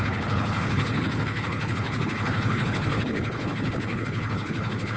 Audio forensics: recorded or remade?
remade